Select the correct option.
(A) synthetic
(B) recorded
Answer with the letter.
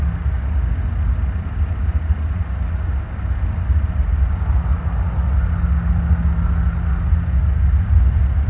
B